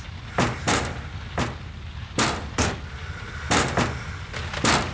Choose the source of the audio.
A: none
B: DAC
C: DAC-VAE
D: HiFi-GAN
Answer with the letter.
A